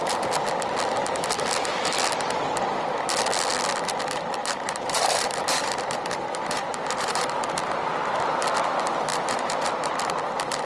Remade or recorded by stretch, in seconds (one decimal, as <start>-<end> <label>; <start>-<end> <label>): 0.0-4.4 recorded; 4.4-7.4 remade; 7.4-9.1 recorded; 9.1-9.7 remade; 9.7-10.7 recorded